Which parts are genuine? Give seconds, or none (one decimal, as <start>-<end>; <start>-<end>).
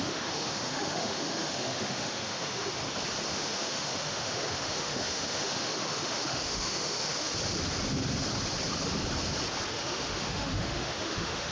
2.8-3.3; 7.3-9.7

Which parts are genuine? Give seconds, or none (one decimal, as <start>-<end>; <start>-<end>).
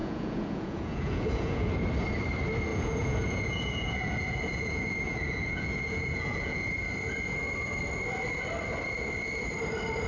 1.7-2.7; 6.7-10.1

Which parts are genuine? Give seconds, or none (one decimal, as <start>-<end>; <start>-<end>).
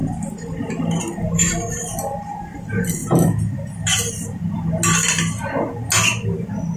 0.0-6.8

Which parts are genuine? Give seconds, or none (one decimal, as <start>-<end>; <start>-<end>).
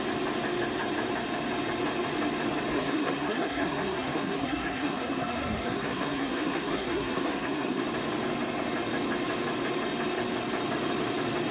0.0-2.7; 7.8-11.5